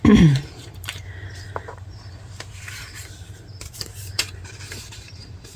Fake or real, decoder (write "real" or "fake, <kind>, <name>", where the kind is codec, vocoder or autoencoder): fake, vocoder, BigVGAN v2